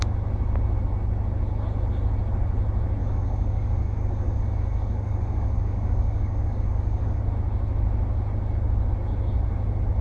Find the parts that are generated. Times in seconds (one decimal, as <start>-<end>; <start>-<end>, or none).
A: 3.0-7.2